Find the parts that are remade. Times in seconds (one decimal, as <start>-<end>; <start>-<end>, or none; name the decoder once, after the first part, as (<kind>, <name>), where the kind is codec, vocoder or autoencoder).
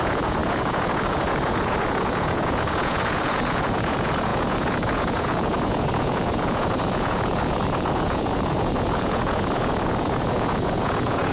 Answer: 0.0-11.3 (vocoder, Vocos)